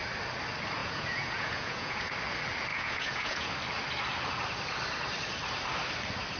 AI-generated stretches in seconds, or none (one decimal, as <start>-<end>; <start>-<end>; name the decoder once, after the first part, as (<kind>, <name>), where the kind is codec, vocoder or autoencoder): 0.8-2.1 (vocoder, Vocos); 2.7-3.5